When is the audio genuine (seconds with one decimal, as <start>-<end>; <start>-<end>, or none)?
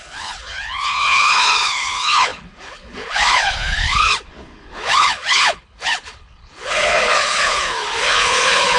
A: none